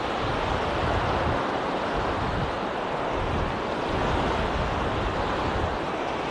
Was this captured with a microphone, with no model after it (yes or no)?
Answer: yes